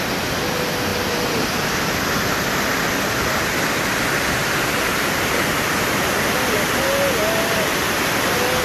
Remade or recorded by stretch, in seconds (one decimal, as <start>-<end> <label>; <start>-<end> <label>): 0.0-8.6 recorded